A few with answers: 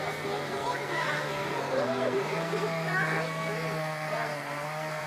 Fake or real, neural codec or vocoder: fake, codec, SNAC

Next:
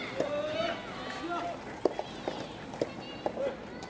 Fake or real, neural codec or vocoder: real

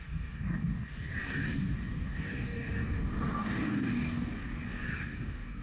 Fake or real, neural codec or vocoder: fake, codec, DAC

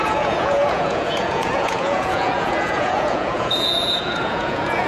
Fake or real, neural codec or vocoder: fake, vocoder, Vocos